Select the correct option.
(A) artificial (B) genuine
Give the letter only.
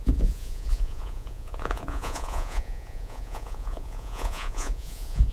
A